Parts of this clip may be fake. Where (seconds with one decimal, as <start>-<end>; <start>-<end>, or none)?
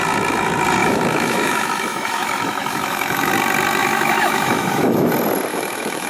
0.8-3.3; 3.8-5.1; 5.5-6.1